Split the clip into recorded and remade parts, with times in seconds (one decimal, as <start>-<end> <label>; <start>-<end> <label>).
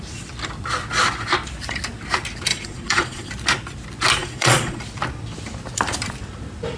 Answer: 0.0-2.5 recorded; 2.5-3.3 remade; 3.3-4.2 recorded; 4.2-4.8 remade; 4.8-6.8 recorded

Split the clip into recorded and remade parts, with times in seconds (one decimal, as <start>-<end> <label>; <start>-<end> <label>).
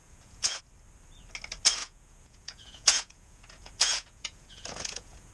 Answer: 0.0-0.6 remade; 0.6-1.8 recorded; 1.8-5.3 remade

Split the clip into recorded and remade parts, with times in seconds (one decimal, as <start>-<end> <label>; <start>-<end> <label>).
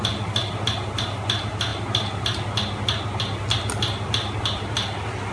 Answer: 0.0-5.3 recorded